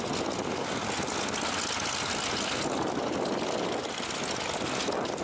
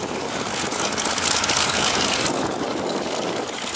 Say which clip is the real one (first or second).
first